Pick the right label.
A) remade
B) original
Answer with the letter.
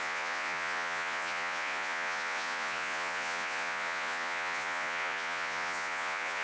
A